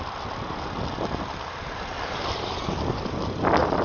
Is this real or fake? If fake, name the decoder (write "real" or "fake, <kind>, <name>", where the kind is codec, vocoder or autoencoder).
fake, vocoder, BigVGAN v2